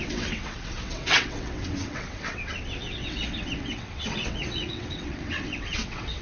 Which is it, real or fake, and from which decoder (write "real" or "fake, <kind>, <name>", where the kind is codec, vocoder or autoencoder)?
fake, vocoder, WaveNeXt